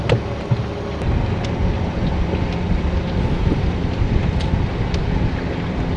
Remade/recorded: recorded